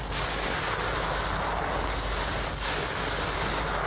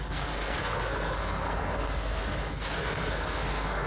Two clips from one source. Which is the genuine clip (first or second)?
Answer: first